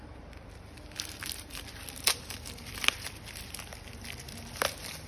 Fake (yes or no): yes